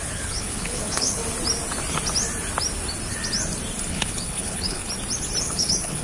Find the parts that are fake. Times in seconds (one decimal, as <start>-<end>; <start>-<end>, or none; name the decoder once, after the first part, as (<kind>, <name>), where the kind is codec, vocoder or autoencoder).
0.0-1.2 (codec, HILCodec); 3.9-4.8; 5.4-6.0